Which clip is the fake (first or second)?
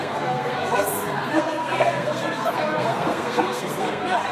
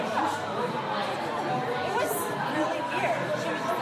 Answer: first